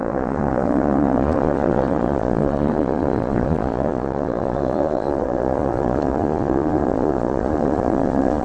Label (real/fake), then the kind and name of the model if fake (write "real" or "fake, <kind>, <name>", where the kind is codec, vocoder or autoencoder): fake, vocoder, Vocos